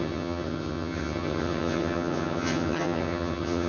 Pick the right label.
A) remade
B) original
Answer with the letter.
A